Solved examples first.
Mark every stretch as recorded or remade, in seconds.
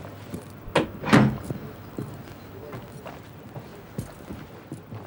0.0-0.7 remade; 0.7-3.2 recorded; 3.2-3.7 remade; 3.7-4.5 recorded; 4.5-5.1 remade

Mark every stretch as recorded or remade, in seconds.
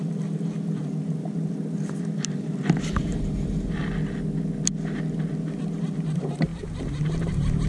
0.0-3.8 remade; 3.8-5.6 recorded; 5.6-7.7 remade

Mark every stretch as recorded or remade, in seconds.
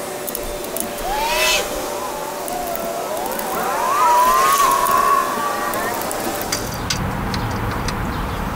0.0-8.5 recorded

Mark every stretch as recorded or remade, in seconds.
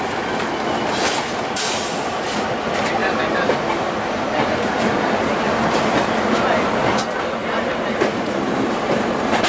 0.0-7.4 recorded; 7.4-9.1 remade; 9.1-9.5 recorded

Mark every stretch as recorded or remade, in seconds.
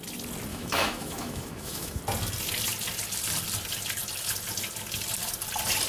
0.0-0.5 recorded; 0.5-2.0 remade; 2.0-5.9 recorded